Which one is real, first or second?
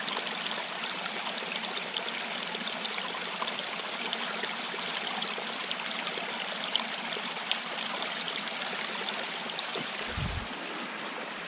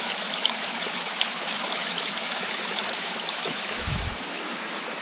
first